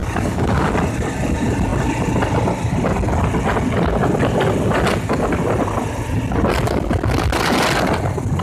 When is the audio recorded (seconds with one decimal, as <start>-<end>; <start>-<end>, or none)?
0.7-8.4